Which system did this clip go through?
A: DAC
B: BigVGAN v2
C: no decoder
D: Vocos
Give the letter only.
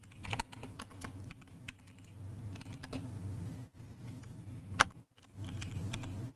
C